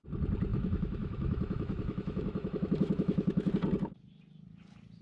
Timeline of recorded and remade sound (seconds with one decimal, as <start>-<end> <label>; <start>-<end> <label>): 0.0-0.5 recorded; 0.5-3.5 remade; 3.5-5.0 recorded